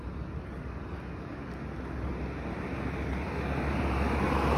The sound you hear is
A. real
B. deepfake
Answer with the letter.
A